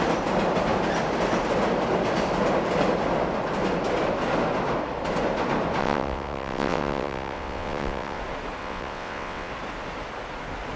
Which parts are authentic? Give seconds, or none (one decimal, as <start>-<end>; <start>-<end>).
0.0-5.8; 8.2-8.6; 9.5-10.8